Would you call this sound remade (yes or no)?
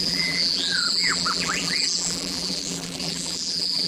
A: yes